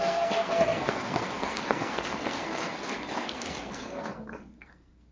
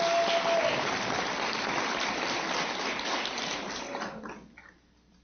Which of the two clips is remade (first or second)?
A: first